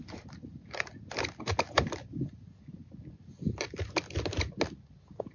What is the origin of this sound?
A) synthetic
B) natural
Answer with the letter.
B